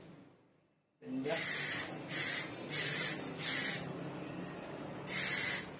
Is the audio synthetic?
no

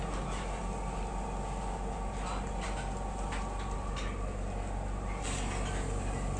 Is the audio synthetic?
no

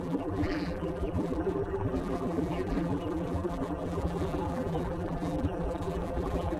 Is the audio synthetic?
yes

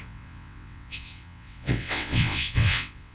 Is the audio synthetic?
yes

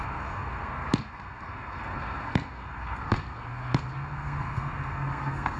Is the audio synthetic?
yes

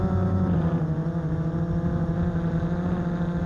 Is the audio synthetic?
no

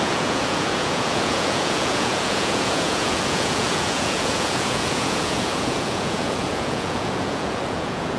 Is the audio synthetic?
yes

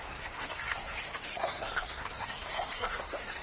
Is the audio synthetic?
yes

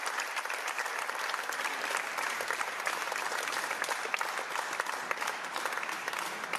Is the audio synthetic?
yes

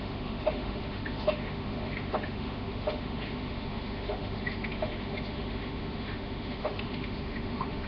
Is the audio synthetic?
yes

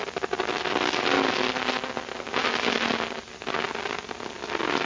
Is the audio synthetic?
no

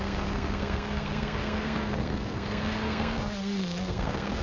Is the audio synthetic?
yes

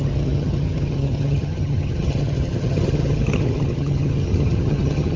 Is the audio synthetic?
yes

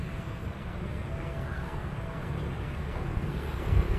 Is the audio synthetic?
yes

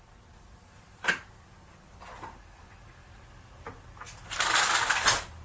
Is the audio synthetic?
no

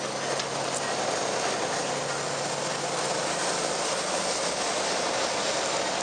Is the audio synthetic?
no